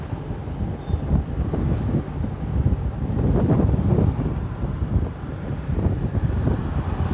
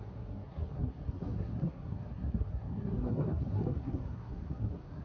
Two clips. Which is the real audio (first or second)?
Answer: first